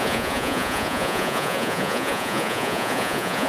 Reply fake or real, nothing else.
fake